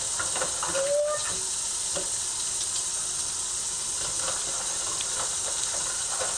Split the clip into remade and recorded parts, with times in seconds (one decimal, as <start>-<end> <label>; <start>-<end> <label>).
0.0-6.4 recorded